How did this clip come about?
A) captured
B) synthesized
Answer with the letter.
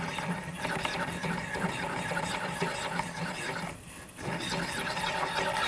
A